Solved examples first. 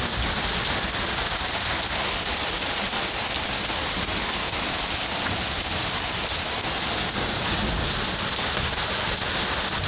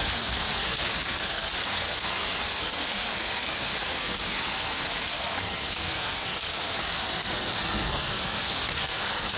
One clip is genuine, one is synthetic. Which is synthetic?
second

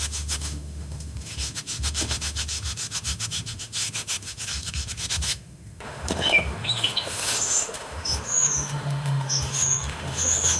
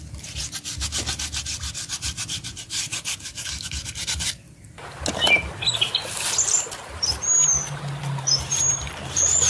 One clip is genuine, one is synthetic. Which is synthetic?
first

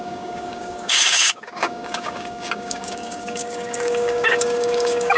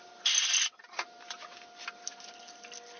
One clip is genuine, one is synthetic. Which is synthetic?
first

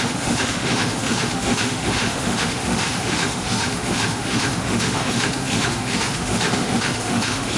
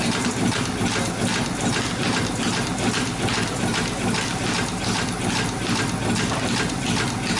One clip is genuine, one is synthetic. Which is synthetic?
first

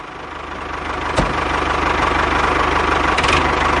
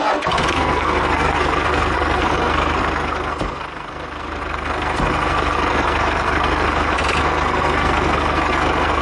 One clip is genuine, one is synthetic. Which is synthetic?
second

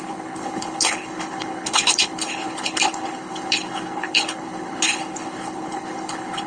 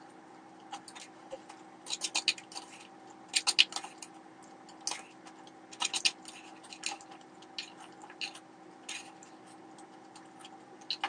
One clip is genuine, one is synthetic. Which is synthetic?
first